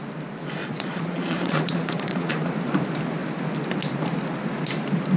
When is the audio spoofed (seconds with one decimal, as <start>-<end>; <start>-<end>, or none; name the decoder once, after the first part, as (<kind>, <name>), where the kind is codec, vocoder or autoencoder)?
0.6-2.5 (vocoder, Vocos)